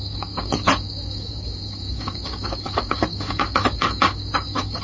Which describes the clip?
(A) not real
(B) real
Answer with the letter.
A